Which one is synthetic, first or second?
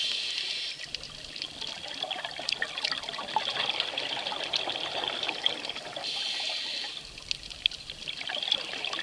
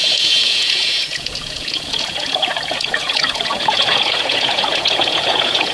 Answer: second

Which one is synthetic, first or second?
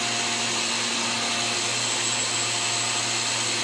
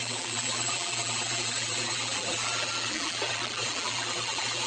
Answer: second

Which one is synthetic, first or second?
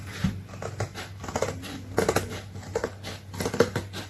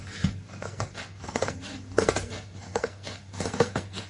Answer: second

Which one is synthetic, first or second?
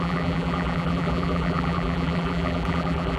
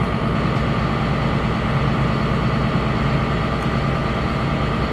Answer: first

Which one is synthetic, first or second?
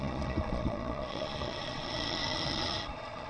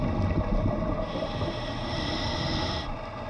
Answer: first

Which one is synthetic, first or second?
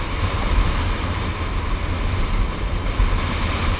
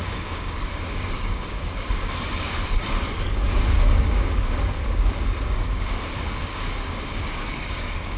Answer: second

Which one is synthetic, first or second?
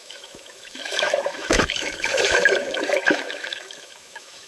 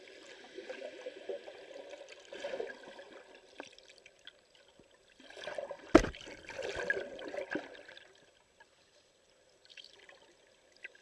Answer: first